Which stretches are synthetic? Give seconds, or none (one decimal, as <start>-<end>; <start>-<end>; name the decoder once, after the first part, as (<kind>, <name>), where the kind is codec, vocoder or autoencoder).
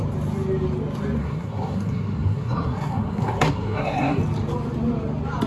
1.2-4.2 (codec, SNAC)